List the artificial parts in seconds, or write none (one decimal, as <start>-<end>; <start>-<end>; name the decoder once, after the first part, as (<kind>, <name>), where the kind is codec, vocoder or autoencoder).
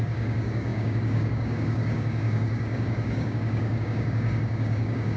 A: 0.0-5.2 (codec, DAC)